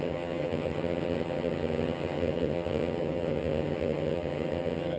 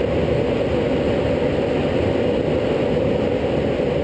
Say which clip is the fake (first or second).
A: first